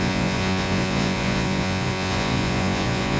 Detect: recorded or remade remade